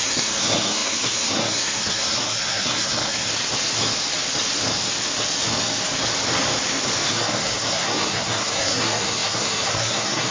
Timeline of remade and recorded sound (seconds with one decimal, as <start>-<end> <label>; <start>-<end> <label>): 0.0-3.3 remade; 3.3-7.1 recorded; 7.1-10.3 remade